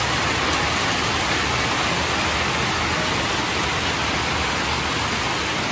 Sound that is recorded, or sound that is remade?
recorded